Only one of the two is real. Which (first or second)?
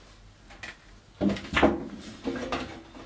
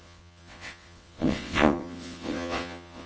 first